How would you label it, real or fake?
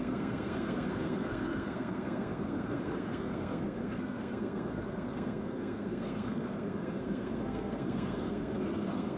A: fake